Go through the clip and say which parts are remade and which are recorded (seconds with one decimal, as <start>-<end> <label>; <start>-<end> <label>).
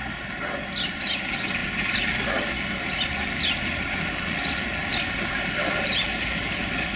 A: 0.0-7.0 recorded